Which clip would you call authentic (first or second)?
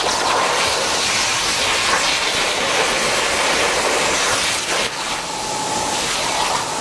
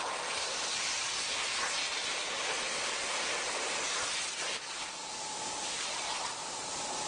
first